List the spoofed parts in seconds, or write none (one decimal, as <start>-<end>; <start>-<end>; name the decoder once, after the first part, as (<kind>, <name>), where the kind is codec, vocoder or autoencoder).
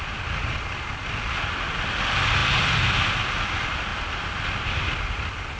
none